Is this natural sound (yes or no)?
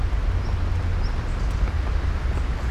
yes